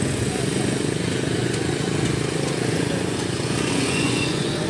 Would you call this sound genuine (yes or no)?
no